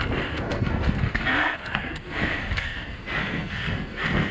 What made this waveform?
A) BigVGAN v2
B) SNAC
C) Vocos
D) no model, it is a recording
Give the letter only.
B